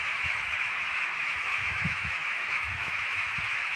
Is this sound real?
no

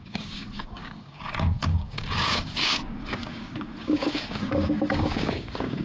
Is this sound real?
no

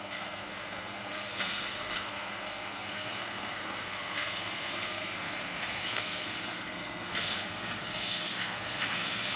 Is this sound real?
no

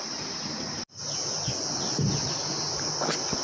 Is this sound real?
yes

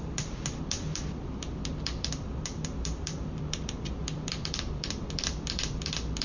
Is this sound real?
no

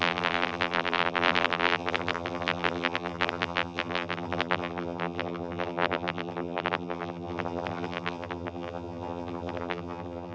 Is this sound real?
no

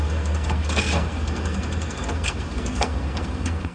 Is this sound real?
no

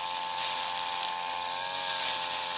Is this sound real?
yes